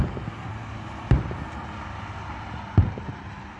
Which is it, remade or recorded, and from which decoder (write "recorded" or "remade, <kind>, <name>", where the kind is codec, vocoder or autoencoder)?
recorded